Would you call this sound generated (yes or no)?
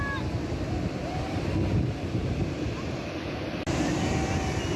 no